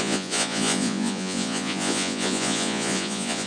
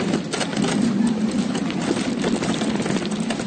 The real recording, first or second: second